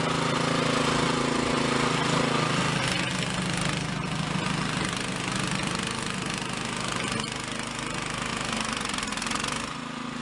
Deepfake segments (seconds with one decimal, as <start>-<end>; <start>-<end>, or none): none

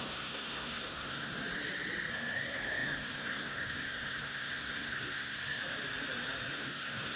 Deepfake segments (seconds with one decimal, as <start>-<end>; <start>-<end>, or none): 0.0-1.3; 2.1-5.6; 6.5-7.2

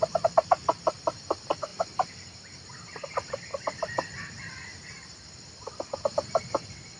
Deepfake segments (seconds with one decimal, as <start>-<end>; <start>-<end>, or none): none

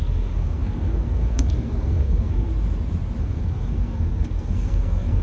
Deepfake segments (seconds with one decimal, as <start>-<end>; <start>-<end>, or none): 0.0-2.5; 3.2-5.2